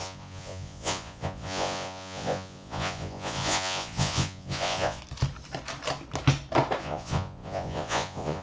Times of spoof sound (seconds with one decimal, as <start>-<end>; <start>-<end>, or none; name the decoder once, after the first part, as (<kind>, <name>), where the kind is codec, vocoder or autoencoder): 0.0-5.0 (vocoder, Vocos); 6.8-8.4